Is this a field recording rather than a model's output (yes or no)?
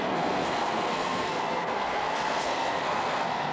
no